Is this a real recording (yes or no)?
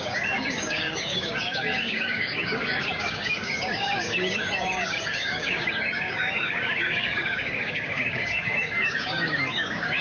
no